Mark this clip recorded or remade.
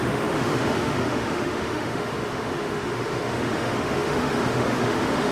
remade